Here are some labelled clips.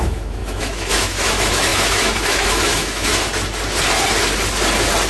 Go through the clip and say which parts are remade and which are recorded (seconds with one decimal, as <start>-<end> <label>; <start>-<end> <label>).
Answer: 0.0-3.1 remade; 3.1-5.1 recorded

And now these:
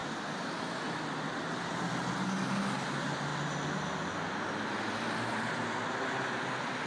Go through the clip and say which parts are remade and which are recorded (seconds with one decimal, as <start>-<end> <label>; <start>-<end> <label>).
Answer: 0.0-6.9 recorded

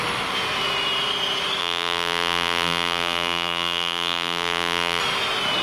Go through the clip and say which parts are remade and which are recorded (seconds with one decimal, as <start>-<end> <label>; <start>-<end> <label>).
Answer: 0.0-1.6 recorded; 1.6-5.0 remade; 5.0-5.6 recorded